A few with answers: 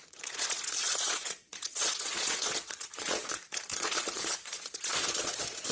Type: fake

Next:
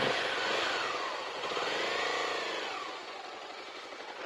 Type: fake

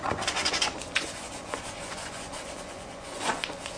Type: fake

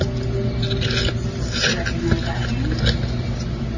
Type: real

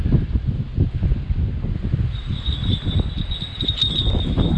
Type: real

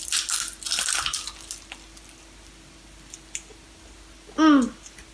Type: real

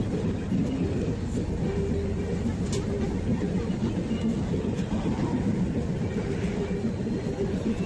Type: real